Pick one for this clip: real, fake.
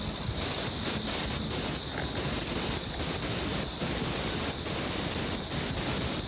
real